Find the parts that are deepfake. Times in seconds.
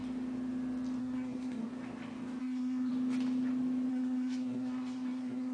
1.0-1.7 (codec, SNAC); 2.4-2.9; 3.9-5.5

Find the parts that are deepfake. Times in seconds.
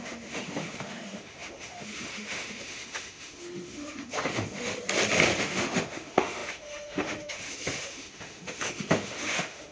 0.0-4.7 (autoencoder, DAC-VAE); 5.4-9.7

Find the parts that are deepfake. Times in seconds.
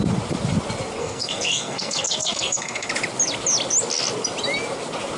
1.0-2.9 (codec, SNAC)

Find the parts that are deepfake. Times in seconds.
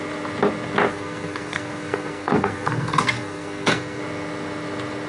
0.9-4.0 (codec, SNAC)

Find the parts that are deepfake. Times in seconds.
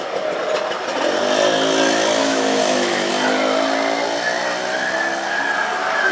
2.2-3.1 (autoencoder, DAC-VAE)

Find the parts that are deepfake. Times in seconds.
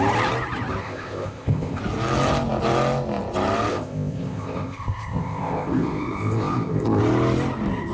0.8-1.8 (codec, ZipCodec); 3.7-7.0